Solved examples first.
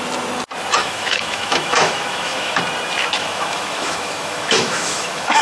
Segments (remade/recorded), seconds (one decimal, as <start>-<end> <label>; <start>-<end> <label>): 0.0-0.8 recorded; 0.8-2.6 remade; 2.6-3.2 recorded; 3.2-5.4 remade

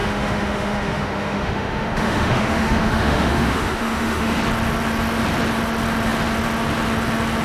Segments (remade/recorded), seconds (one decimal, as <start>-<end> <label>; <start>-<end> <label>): 0.0-4.4 remade; 4.4-7.4 recorded

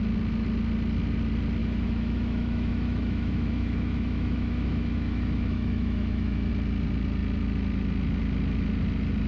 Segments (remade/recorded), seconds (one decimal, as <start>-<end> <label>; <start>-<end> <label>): 0.0-1.6 recorded; 1.6-6.5 remade; 6.5-9.3 recorded

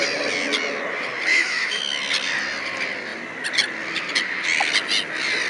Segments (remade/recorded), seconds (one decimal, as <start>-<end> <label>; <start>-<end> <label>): 0.0-1.3 recorded; 1.3-1.8 remade; 1.8-5.5 recorded

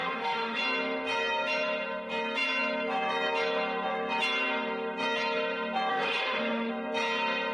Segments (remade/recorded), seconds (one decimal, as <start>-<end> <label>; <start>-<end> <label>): 0.0-0.6 remade; 0.6-5.9 recorded; 5.9-6.7 remade; 6.7-7.5 recorded

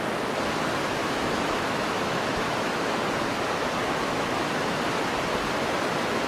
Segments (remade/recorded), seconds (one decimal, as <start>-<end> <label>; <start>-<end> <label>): 0.0-1.0 recorded; 1.0-3.0 remade; 3.0-3.8 recorded; 3.8-4.8 remade; 4.8-6.3 recorded

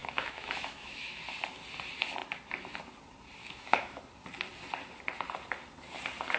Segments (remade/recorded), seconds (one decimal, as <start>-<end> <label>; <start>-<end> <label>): 0.0-1.2 remade; 1.2-3.4 recorded; 3.4-4.0 remade; 4.0-6.4 recorded